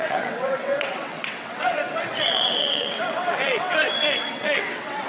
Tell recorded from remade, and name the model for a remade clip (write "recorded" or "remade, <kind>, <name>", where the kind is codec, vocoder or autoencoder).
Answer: remade, vocoder, WaveNeXt